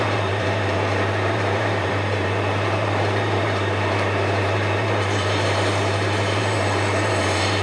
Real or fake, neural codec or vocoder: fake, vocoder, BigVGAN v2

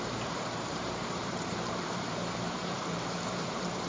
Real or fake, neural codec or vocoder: fake, vocoder, BigVGAN v2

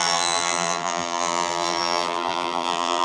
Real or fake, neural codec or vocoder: fake, vocoder, BigVGAN v2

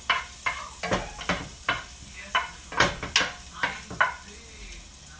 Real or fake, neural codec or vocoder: real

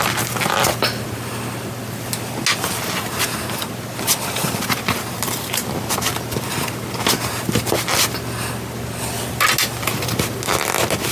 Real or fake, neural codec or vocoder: real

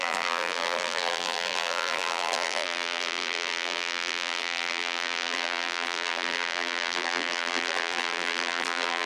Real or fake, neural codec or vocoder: fake, vocoder, BigVGAN v2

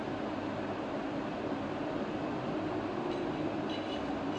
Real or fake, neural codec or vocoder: real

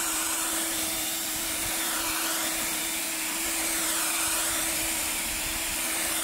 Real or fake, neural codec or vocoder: fake, vocoder, BigVGAN v2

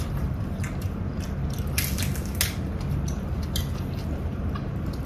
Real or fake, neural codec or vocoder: real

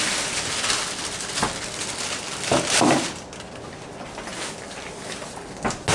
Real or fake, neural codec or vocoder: real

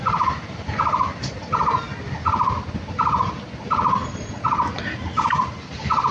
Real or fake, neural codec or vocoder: real